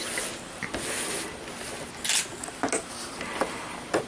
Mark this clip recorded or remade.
recorded